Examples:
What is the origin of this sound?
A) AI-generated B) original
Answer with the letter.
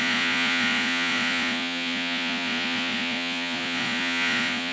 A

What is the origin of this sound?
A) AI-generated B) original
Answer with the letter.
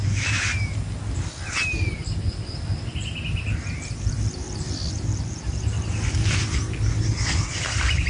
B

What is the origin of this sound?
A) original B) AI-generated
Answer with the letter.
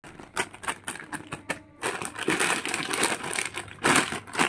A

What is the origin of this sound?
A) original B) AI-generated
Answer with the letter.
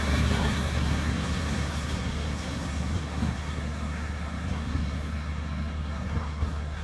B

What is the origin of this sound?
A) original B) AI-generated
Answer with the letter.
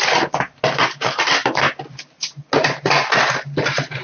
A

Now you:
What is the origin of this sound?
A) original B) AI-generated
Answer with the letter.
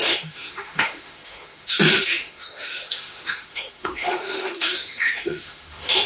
B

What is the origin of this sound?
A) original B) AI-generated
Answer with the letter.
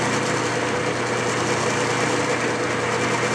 A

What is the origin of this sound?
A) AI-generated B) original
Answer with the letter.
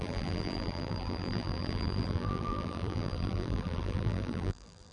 A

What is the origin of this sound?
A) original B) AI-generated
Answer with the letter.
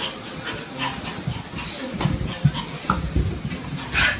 A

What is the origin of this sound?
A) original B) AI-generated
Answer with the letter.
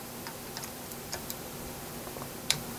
B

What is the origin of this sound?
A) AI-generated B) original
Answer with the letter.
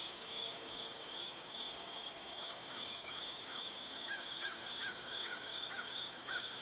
A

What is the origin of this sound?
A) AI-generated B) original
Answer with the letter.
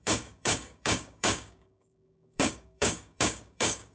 A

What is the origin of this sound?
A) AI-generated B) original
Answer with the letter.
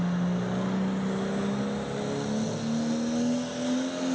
B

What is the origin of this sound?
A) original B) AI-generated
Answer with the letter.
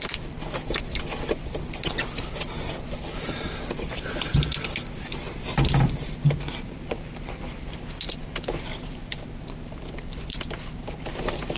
A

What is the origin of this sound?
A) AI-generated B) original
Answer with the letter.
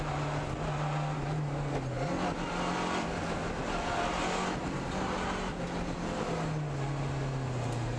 B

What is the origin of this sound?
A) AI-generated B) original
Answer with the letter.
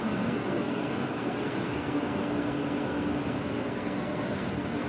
A